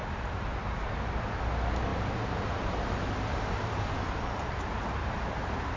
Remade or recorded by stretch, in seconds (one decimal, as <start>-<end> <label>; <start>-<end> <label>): 0.0-0.8 remade; 0.8-1.9 recorded; 1.9-5.8 remade